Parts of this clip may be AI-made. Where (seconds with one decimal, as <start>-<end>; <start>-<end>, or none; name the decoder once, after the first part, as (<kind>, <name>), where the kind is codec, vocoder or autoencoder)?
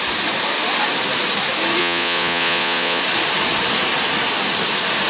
1.8-3.0 (vocoder, Vocos)